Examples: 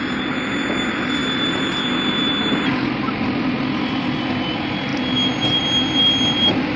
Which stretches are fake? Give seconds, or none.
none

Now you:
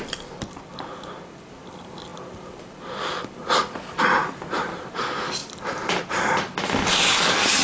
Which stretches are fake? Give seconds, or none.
2.1-4.8 (vocoder, BigVGAN v2); 5.4-6.0

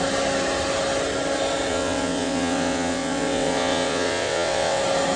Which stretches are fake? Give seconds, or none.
1.7-4.8 (vocoder, WaveNeXt)

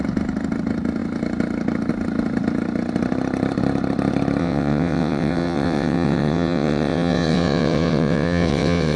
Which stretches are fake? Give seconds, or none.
4.4-9.0 (vocoder, WaveNeXt)

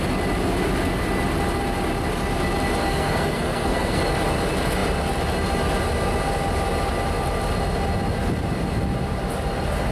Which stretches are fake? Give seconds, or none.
2.8-4.0 (codec, SNAC)

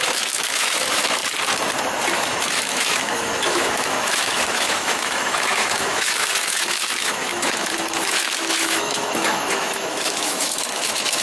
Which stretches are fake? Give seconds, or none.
0.0-1.2 (autoencoder, DAC-VAE); 2.1-11.2